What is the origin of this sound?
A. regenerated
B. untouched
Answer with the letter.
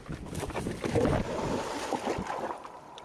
B